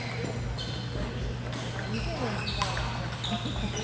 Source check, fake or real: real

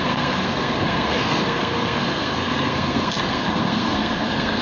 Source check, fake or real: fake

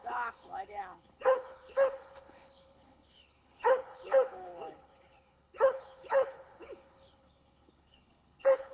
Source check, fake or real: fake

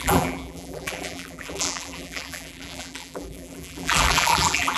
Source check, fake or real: fake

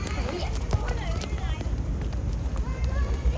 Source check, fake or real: fake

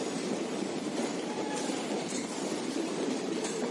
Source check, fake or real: fake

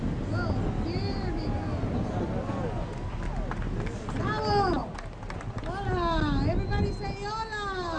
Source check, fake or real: real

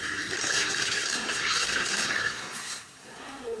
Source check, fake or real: fake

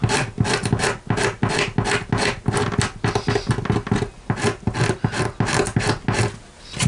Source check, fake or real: real